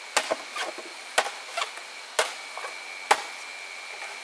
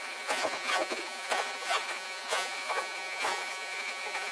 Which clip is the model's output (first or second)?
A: second